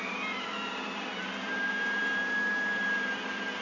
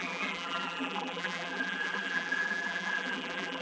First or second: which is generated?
second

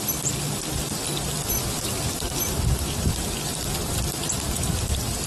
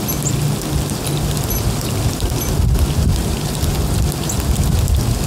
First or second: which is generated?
first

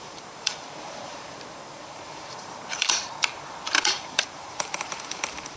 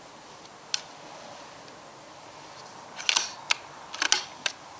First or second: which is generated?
first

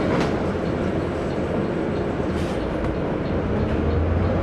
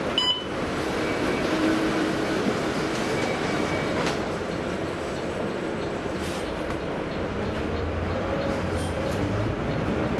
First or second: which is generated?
second